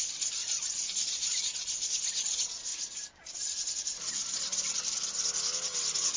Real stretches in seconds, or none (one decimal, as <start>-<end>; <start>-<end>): 0.0-0.4; 1.3-2.7; 3.4-6.2